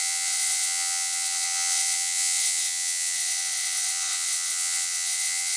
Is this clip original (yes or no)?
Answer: no